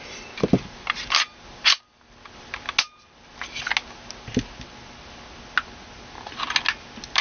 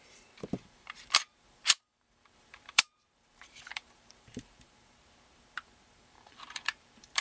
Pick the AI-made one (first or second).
second